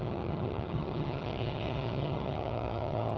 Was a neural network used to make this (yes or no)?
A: yes